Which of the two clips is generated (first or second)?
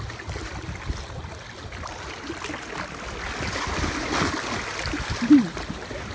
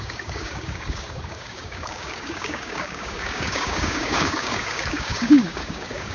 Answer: second